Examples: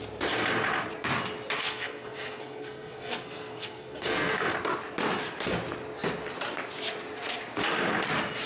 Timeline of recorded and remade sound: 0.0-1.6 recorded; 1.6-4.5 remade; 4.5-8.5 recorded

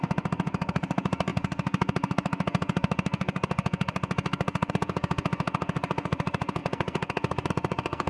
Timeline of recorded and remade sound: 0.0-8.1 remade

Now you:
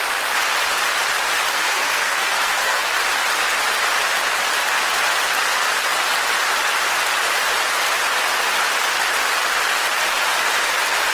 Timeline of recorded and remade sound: 0.0-1.5 recorded; 1.5-2.9 remade; 2.9-11.1 recorded

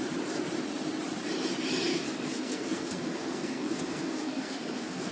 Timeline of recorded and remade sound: 0.0-1.9 recorded; 1.9-5.1 remade